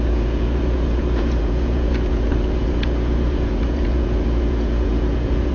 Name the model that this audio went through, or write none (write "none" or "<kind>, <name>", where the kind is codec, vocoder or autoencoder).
vocoder, Vocos